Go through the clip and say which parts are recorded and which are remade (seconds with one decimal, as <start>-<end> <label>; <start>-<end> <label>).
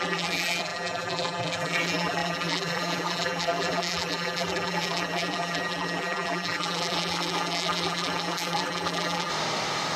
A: 0.0-9.3 remade; 9.3-10.0 recorded